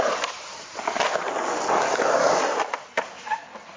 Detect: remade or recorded recorded